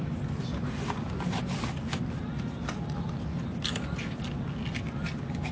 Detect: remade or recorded recorded